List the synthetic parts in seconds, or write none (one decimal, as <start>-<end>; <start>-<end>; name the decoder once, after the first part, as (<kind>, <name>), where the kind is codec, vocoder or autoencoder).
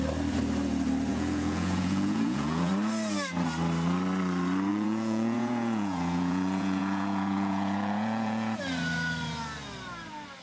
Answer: 1.1-2.7 (vocoder, Vocos); 4.7-8.6